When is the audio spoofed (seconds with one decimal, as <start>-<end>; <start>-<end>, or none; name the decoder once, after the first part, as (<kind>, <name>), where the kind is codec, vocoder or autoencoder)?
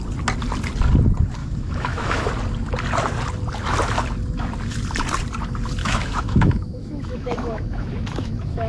1.4-2.3 (autoencoder, DAC-VAE); 5.8-8.7